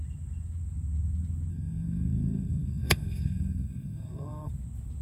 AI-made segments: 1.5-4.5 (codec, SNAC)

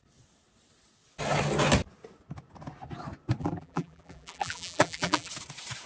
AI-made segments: 3.4-5.3 (vocoder, BigVGAN v2)

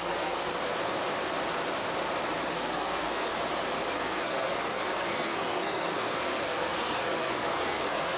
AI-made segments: 0.0-0.5 (codec, SNAC); 2.5-3.3; 3.9-8.2

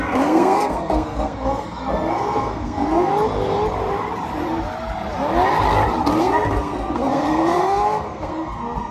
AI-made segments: 0.0-3.1 (codec, SNAC); 6.2-8.9

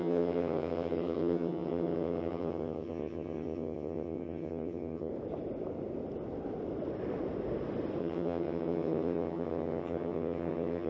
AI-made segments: 0.0-5.1 (vocoder, HiFi-GAN); 8.0-10.9

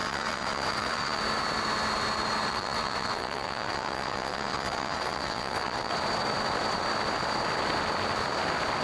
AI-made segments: 0.0-1.2 (vocoder, WaveNeXt); 2.5-5.9

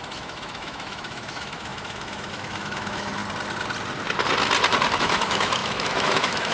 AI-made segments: 0.0-3.2 (autoencoder, DAC-VAE); 5.0-6.5